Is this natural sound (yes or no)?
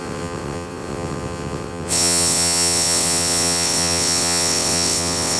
no